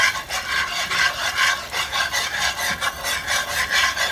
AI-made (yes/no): no